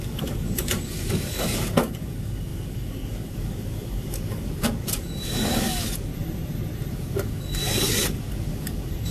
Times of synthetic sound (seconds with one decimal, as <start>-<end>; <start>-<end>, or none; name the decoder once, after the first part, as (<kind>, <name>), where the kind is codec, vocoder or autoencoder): 0.0-6.1 (codec, DAC); 6.9-9.1